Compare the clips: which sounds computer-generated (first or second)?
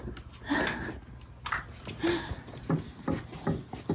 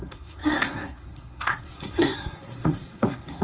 second